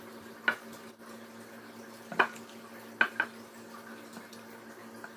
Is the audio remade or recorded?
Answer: recorded